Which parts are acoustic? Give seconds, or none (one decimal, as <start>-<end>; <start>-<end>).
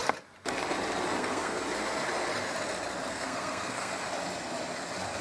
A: 0.0-1.2; 1.6-3.1; 3.9-5.2